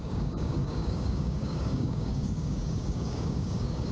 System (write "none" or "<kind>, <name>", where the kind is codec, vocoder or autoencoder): codec, DAC